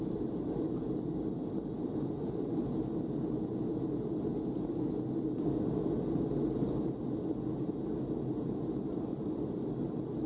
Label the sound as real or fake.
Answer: real